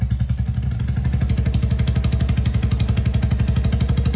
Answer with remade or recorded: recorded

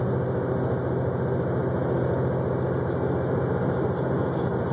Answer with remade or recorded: recorded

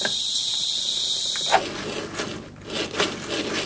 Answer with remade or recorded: recorded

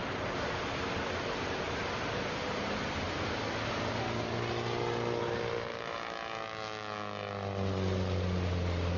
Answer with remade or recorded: recorded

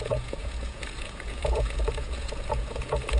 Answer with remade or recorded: remade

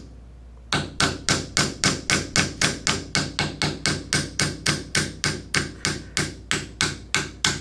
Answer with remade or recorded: recorded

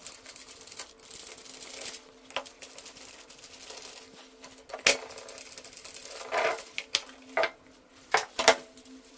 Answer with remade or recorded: recorded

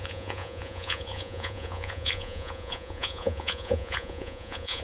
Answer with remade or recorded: remade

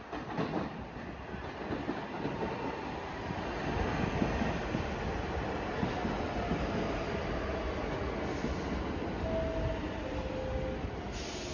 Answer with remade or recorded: recorded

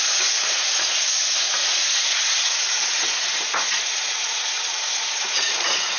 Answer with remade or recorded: remade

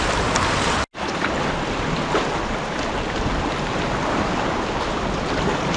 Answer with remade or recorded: recorded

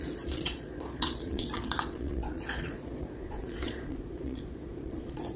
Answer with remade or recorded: remade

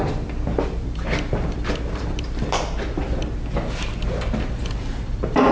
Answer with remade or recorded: recorded